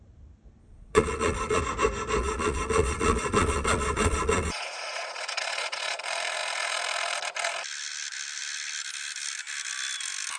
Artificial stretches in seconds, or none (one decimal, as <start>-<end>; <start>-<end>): 0.6-1.6; 2.2-6.0